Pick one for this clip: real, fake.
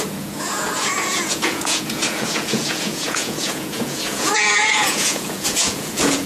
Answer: fake